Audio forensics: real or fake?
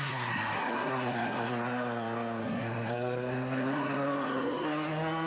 fake